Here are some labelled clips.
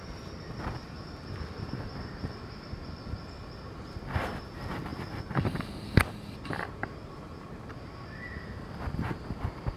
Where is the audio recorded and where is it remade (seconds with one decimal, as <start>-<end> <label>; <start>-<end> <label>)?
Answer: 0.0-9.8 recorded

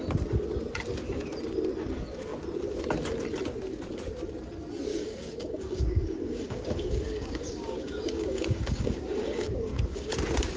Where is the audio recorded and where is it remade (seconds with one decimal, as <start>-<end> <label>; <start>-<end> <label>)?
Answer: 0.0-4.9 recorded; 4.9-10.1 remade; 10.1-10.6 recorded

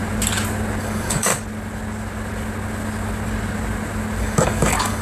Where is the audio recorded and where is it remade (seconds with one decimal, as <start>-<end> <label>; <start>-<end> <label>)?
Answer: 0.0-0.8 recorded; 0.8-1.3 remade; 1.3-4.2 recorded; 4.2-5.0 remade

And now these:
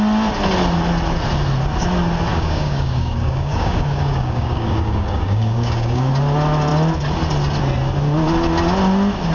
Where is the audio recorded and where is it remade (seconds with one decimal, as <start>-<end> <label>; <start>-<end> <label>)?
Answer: 0.0-2.3 recorded; 2.3-6.1 remade; 6.1-9.3 recorded

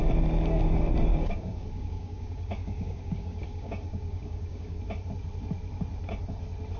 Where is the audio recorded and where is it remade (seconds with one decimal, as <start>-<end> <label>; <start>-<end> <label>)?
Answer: 0.0-1.1 recorded; 1.1-4.8 remade; 4.8-6.8 recorded

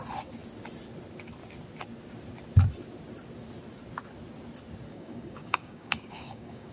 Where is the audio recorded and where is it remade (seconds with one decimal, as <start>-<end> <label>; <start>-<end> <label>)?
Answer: 0.0-4.9 recorded; 4.9-6.7 remade

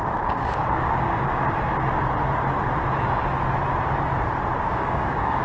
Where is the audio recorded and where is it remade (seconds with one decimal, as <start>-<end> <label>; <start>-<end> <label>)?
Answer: 0.0-1.4 remade; 1.4-4.6 recorded; 4.6-5.4 remade

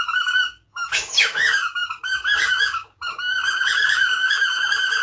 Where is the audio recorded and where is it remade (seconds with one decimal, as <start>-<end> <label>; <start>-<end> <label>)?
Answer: 0.0-5.0 remade